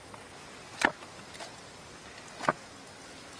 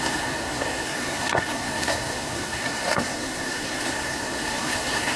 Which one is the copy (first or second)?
second